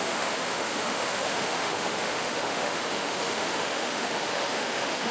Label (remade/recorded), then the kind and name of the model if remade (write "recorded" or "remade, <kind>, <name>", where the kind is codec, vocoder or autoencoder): remade, autoencoder, DAC-VAE